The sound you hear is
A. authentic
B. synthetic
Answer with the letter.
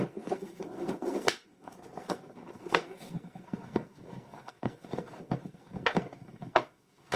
B